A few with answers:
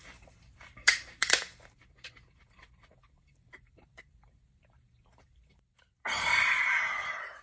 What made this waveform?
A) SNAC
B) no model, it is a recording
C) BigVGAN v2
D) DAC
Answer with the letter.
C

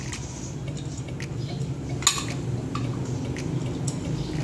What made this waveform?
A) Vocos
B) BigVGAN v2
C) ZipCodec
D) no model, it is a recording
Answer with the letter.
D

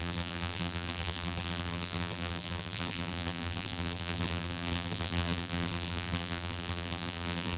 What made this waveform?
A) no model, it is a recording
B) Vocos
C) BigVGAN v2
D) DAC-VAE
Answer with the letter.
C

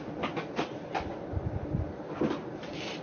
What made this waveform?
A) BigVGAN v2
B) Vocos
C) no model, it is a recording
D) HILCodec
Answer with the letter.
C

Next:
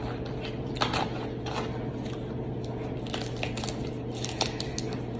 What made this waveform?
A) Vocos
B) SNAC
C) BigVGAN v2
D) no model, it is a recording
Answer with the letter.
D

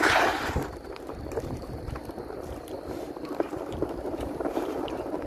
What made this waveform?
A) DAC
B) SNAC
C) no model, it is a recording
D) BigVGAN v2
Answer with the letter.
D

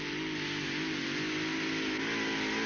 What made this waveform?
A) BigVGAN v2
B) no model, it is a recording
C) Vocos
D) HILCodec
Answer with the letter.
B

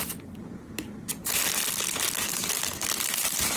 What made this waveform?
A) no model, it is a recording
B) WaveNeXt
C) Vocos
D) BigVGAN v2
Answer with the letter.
A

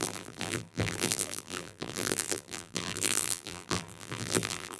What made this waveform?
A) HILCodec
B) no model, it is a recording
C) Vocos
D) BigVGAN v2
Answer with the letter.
D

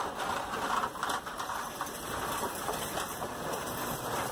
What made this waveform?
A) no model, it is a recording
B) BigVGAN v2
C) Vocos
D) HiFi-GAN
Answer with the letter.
B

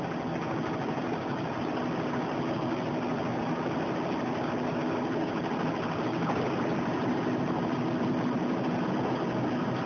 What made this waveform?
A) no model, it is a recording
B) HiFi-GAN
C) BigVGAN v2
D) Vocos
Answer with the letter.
A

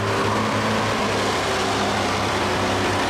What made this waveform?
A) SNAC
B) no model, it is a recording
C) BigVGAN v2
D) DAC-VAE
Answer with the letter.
C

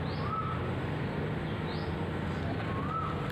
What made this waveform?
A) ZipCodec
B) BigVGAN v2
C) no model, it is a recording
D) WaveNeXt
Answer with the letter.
C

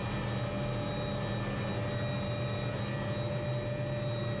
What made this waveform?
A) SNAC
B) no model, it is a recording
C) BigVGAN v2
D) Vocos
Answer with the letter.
B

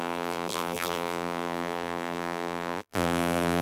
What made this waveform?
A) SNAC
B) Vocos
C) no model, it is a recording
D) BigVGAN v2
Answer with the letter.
D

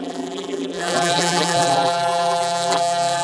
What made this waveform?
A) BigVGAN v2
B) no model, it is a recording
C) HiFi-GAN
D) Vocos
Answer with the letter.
A